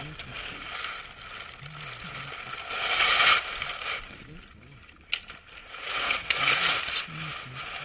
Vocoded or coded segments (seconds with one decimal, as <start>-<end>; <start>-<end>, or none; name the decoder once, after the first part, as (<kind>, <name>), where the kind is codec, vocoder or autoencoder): 5.6-6.8 (vocoder, Vocos)

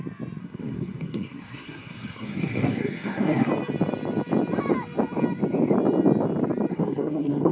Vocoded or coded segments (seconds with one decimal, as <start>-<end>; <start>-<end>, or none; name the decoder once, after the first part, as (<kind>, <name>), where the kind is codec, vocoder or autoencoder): 0.4-3.5 (codec, SNAC); 6.7-7.5

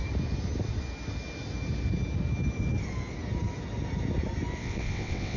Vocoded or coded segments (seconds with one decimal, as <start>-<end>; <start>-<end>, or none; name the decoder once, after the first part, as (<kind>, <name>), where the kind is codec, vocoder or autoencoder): 4.6-5.4 (vocoder, WaveNeXt)

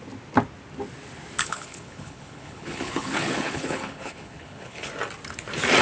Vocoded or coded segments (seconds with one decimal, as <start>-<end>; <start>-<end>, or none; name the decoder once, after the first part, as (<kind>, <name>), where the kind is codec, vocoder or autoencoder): 1.4-4.9 (codec, HILCodec)